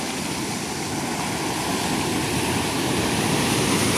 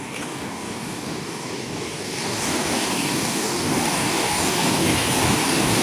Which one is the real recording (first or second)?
first